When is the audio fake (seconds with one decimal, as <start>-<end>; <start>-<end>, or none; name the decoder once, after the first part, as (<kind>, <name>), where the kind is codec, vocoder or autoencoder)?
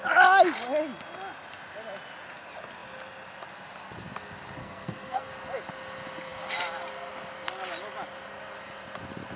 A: 4.6-5.3 (codec, SNAC)